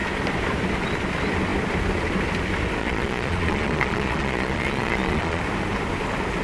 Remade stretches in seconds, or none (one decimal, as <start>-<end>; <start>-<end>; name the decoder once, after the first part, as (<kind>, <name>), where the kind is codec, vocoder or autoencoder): 2.8-5.4 (vocoder, Vocos)